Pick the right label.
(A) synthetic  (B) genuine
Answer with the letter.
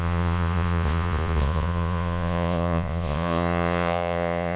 A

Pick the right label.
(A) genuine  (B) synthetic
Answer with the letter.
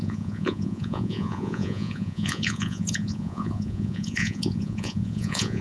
B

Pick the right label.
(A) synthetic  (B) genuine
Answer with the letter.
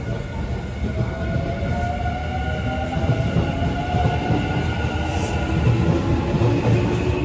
B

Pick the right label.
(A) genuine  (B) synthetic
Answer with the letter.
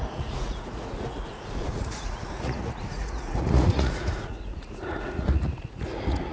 B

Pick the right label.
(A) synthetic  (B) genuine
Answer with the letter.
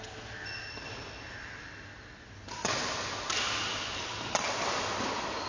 B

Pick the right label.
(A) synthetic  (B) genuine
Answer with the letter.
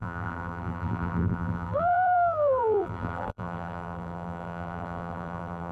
A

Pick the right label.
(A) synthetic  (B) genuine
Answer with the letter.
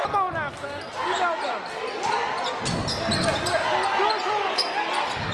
B